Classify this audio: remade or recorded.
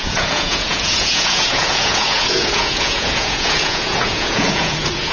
remade